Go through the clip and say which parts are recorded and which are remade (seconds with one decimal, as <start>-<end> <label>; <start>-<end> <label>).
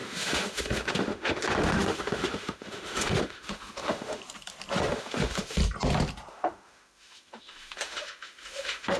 0.0-4.2 remade; 4.2-4.9 recorded; 4.9-5.6 remade; 5.6-6.3 recorded; 6.3-9.0 remade